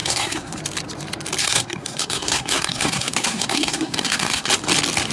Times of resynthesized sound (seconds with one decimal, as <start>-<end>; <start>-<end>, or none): 0.0-0.6; 1.4-4.5